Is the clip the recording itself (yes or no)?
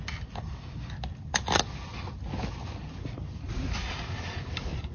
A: yes